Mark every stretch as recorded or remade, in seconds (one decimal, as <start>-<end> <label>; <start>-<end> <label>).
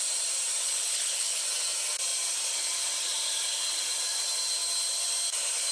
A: 0.0-0.6 recorded; 0.6-1.4 remade; 1.4-5.7 recorded